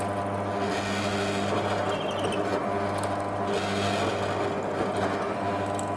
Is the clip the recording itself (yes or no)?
yes